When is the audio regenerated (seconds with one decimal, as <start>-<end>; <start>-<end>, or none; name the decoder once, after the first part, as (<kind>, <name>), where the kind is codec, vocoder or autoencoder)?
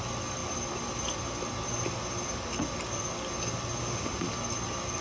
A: 3.8-4.3 (autoencoder, DAC-VAE)